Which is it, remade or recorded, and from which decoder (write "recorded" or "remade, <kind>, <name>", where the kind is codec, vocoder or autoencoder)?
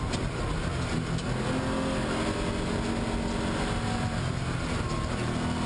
recorded